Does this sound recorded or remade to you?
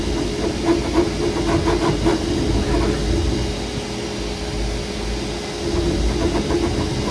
recorded